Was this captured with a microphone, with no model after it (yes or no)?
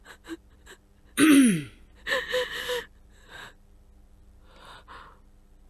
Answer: yes